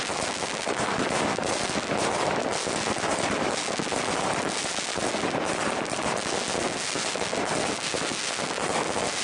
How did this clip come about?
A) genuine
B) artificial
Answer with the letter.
A